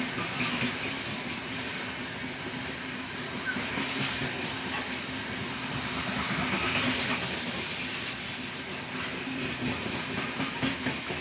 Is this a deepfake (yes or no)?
no